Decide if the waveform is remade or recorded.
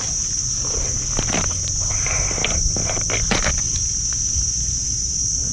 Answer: recorded